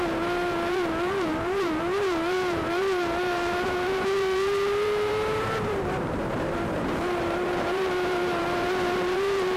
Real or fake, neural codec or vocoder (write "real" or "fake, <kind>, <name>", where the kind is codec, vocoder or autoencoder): fake, vocoder, BigVGAN v2